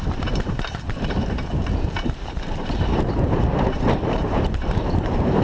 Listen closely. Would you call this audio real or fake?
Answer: fake